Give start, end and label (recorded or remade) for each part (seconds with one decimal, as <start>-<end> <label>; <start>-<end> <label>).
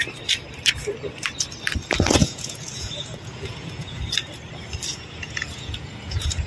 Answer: 0.0-2.2 recorded; 2.2-4.0 remade; 4.0-4.9 recorded; 4.9-6.5 remade